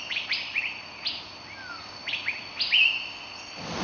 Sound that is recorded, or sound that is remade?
recorded